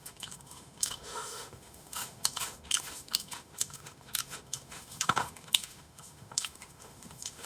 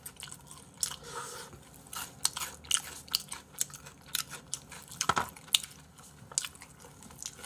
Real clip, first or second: second